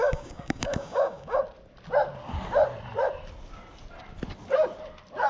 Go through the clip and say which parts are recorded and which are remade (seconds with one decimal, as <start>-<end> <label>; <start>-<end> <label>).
0.0-1.4 remade; 1.4-5.3 recorded